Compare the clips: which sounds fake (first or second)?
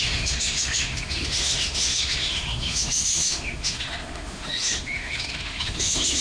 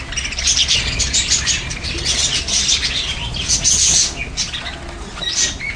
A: first